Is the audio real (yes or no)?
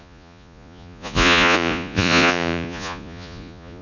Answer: no